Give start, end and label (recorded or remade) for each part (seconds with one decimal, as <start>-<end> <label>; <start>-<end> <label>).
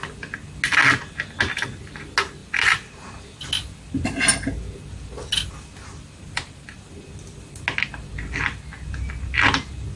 0.0-10.0 recorded